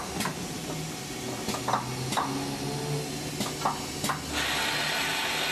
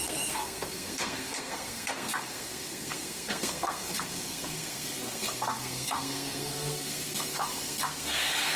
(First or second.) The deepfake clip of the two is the second